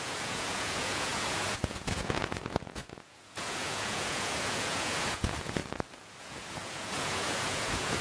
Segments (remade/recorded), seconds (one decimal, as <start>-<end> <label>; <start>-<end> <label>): 0.0-5.6 remade; 5.6-6.2 recorded; 6.2-8.0 remade